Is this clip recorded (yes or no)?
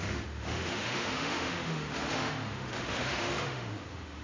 no